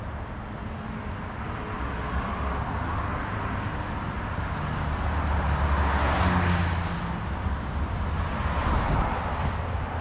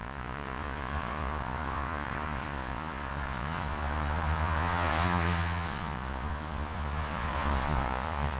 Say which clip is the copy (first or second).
second